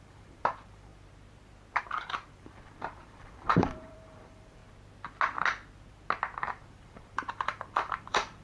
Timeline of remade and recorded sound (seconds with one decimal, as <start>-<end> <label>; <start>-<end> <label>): 0.0-0.9 remade; 0.9-1.8 recorded; 1.8-4.6 remade; 4.6-6.7 recorded; 6.7-8.4 remade